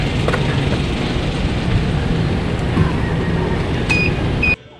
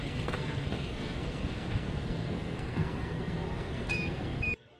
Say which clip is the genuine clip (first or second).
first